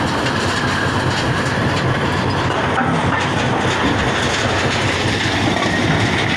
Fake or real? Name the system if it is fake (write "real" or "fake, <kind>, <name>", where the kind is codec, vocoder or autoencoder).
real